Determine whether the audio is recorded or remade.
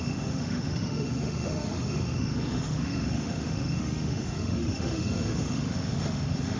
remade